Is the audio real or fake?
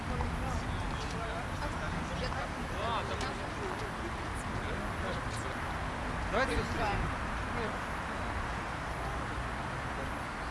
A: real